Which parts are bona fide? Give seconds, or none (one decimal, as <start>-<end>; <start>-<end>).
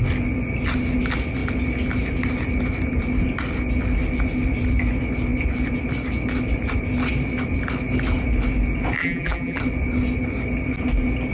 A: 0.0-9.0; 9.6-11.3